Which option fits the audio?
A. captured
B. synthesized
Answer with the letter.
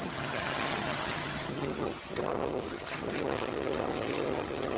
B